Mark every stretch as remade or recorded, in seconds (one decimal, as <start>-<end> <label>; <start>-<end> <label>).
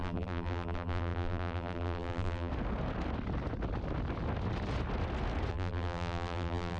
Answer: 0.0-2.5 remade; 2.5-5.5 recorded; 5.5-6.8 remade